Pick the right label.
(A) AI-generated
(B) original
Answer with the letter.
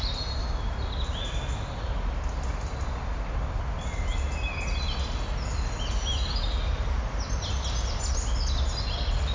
B